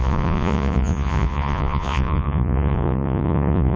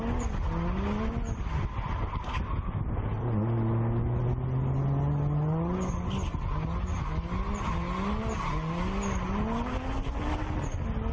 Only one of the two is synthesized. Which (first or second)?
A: first